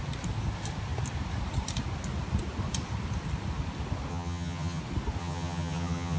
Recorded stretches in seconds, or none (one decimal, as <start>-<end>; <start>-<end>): 0.0-4.1; 4.8-5.2